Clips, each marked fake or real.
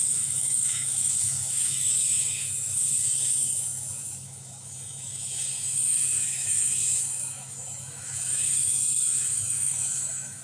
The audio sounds fake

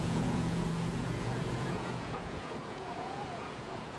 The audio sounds fake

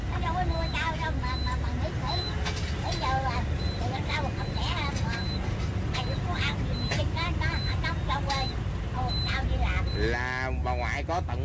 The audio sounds real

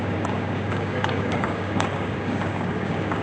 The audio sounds fake